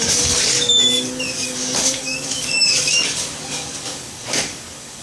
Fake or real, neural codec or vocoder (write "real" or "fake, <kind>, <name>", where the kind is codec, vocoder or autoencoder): fake, codec, DAC